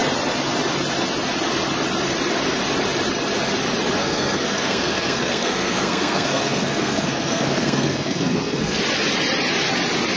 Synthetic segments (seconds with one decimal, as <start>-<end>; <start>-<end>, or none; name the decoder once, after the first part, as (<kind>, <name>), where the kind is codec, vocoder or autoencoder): 4.0-8.8 (codec, SNAC)